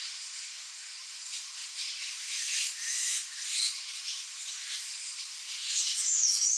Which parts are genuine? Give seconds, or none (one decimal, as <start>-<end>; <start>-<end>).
none